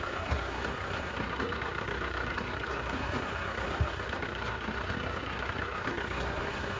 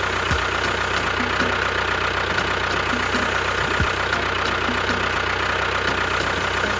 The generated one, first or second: first